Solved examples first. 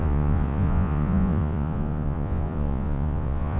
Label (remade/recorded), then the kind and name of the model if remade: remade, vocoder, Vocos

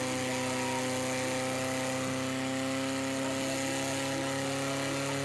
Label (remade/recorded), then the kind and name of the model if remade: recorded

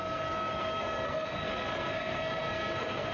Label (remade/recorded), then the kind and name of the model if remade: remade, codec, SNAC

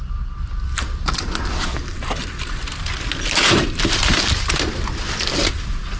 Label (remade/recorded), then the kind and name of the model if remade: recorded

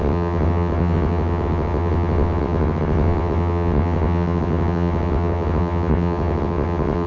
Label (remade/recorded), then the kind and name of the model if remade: remade, vocoder, WaveNeXt